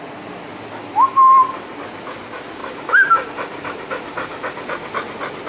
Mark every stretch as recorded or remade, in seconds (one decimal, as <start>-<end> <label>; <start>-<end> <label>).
0.0-5.5 recorded